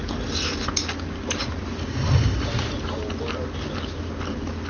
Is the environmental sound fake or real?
real